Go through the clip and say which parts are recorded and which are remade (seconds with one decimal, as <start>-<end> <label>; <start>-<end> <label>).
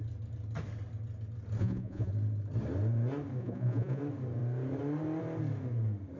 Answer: 0.0-1.6 recorded; 1.6-2.1 remade; 2.1-3.4 recorded; 3.4-4.0 remade; 4.0-6.2 recorded